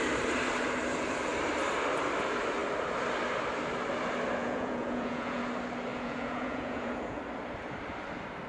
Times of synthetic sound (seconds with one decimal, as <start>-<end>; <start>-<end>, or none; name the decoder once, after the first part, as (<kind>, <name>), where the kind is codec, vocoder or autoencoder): 4.4-5.4 (vocoder, Vocos); 5.9-7.2